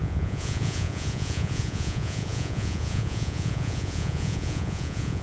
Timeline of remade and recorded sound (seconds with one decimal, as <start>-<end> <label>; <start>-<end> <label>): 0.0-5.2 remade